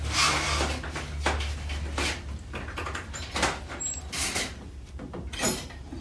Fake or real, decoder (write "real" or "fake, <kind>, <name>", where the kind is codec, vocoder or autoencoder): real